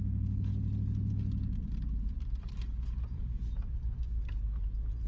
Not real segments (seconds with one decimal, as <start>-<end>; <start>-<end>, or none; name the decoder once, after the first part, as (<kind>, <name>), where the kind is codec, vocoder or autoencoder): 1.6-5.1 (vocoder, BigVGAN v2)